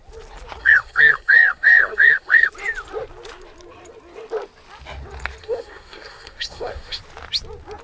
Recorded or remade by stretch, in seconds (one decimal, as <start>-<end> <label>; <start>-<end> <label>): 0.0-0.6 recorded; 0.6-2.5 remade; 2.5-5.4 recorded; 5.4-7.0 remade; 7.0-7.8 recorded